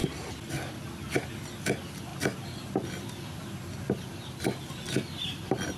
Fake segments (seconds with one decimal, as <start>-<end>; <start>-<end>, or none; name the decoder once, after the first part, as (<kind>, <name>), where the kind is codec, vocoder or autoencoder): none